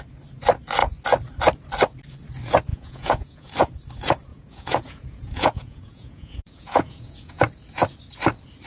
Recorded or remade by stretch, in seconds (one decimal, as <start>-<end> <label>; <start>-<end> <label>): 0.0-2.7 recorded; 2.7-3.7 remade; 3.7-4.3 recorded; 4.3-7.4 remade; 7.4-8.7 recorded